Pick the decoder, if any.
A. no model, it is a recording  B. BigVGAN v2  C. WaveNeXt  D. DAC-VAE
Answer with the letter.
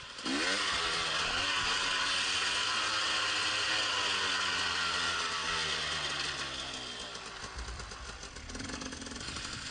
A